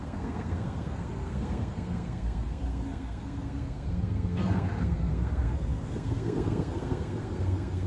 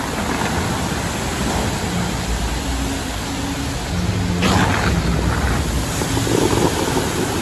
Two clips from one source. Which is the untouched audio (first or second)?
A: second